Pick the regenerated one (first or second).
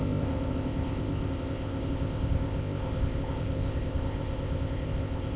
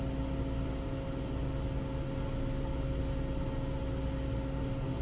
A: first